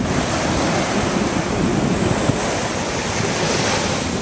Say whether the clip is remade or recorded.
recorded